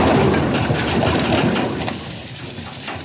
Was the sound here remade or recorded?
recorded